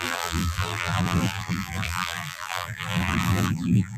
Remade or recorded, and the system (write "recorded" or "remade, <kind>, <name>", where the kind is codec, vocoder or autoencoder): remade, vocoder, BigVGAN v2